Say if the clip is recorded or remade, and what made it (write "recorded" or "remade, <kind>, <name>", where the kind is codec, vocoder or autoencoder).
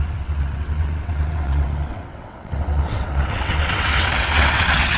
remade, vocoder, WaveNeXt